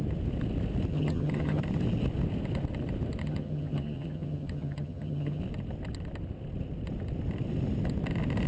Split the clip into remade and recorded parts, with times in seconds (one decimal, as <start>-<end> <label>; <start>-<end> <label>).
0.0-0.9 recorded; 0.9-1.6 remade; 1.6-3.2 recorded; 3.2-5.4 remade; 5.4-8.5 recorded